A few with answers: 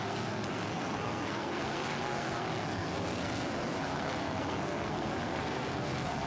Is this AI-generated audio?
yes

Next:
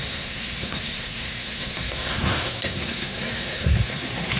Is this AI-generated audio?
yes